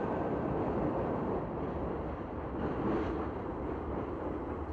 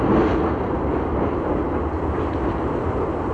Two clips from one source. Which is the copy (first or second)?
first